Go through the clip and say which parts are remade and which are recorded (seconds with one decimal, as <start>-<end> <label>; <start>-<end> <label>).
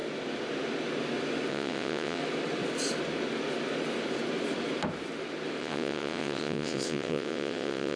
0.0-1.5 recorded; 1.5-2.2 remade; 2.2-5.6 recorded; 5.6-8.0 remade